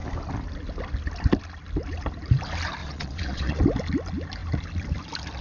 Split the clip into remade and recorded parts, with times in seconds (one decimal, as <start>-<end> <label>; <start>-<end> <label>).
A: 0.0-2.8 recorded; 2.8-3.6 remade; 3.6-5.4 recorded